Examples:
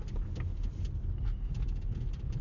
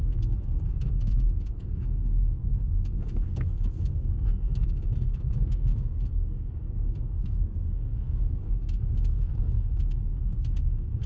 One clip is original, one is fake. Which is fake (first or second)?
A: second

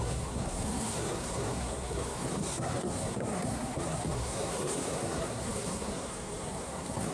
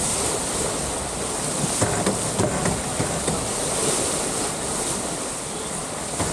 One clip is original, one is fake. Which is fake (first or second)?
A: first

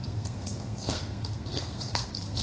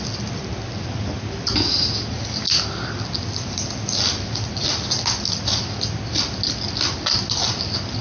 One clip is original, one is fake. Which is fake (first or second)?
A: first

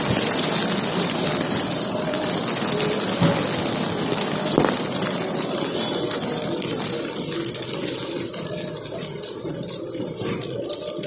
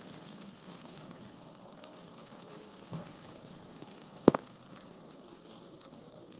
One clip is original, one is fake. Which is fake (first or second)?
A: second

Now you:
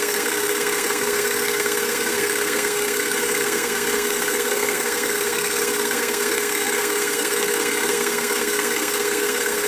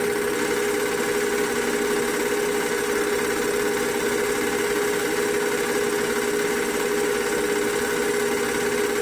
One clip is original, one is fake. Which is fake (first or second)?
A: first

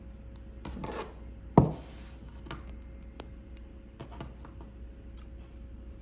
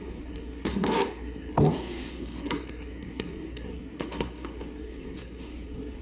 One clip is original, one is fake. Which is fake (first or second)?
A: second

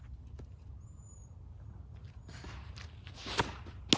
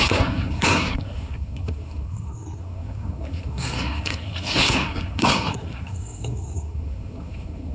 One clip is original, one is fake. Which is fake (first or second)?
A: second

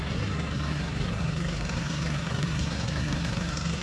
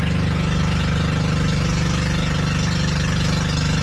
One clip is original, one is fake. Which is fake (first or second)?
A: first